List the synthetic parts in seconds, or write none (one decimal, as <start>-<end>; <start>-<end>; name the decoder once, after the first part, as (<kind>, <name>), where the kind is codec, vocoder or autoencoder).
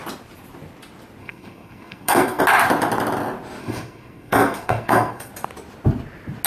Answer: 1.2-2.4 (codec, SNAC); 3.6-5.3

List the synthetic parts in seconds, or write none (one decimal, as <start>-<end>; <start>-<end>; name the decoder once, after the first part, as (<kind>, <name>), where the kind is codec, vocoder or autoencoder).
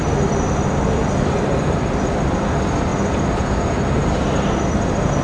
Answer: none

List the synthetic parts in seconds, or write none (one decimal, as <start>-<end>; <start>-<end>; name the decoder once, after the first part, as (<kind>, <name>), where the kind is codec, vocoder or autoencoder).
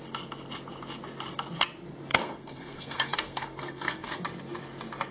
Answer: 2.1-4.2 (codec, SNAC)